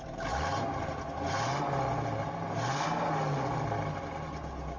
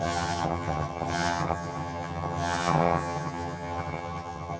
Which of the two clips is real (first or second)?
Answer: first